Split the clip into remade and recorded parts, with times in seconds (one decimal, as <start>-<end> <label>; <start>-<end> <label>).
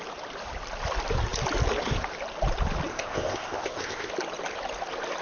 0.0-2.9 recorded; 2.9-4.1 remade; 4.1-5.2 recorded